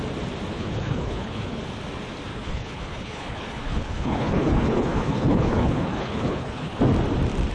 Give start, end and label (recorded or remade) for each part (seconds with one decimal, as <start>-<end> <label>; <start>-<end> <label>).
0.0-0.5 recorded; 0.5-1.6 remade; 1.6-2.3 recorded; 2.3-6.8 remade; 6.8-7.5 recorded